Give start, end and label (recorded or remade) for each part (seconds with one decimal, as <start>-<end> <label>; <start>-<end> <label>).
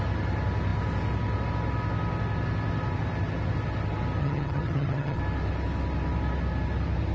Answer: 0.0-4.2 recorded; 4.2-5.2 remade; 5.2-7.1 recorded